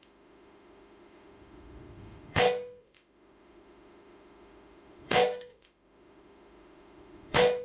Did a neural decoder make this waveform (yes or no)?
yes